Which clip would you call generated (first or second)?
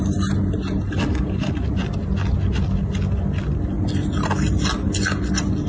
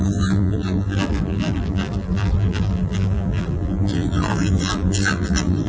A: second